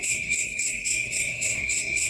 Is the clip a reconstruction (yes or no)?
yes